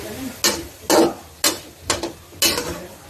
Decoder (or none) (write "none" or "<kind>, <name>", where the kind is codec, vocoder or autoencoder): none